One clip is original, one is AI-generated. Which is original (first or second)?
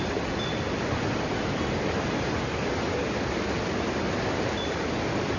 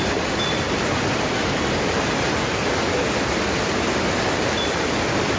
first